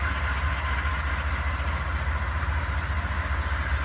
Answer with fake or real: real